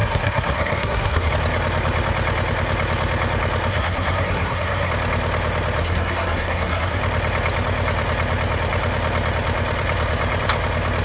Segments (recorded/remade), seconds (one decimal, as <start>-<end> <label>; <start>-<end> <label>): 0.0-1.3 remade; 1.3-3.7 recorded; 3.7-4.9 remade; 4.9-5.8 recorded; 5.8-7.0 remade; 7.0-11.0 recorded